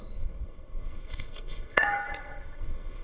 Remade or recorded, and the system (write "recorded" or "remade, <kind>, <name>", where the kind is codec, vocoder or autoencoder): remade, codec, SNAC